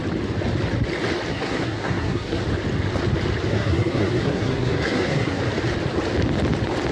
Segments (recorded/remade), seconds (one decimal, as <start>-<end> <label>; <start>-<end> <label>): 0.0-1.3 recorded; 1.3-2.4 remade; 2.4-3.5 recorded; 3.5-5.4 remade; 5.4-6.9 recorded